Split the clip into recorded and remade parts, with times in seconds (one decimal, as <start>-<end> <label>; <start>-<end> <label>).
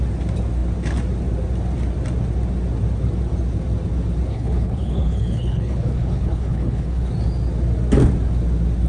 0.0-4.3 recorded; 4.3-7.1 remade; 7.1-8.9 recorded